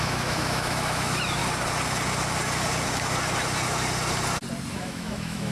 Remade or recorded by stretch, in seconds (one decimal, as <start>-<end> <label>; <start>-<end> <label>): 0.0-1.4 remade; 1.4-4.7 recorded; 4.7-5.5 remade